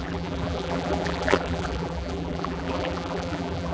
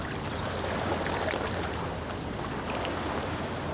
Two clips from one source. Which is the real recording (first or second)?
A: second